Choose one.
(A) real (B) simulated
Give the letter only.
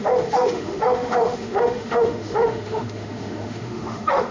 B